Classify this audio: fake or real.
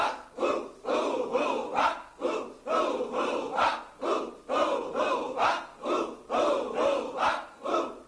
real